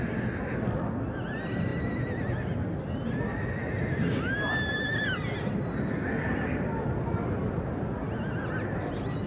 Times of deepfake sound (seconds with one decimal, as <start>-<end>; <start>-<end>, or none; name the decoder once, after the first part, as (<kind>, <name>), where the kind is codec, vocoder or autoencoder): none